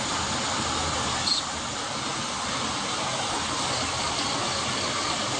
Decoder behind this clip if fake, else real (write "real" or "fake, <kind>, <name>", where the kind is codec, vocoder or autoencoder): real